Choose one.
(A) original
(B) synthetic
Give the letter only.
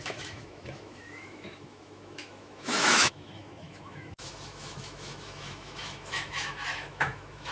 B